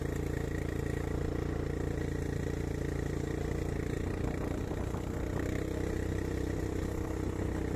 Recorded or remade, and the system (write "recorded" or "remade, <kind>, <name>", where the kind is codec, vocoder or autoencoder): recorded